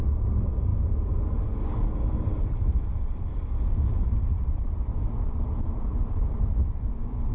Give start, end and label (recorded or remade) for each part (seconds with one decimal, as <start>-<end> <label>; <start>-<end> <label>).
0.0-0.7 recorded; 0.7-5.1 remade; 5.1-5.9 recorded; 5.9-7.3 remade